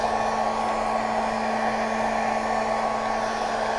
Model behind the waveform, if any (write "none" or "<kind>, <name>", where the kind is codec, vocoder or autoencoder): none